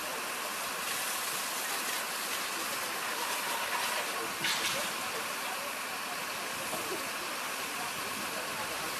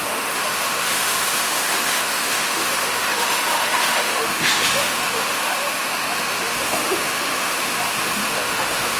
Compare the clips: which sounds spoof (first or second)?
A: second